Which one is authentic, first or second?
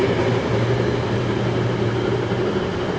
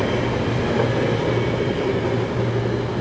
second